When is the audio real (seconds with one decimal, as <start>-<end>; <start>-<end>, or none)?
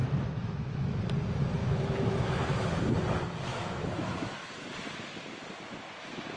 1.0-1.6; 2.8-3.5; 4.7-6.4